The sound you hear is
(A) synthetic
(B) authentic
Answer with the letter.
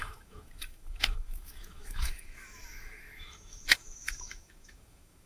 A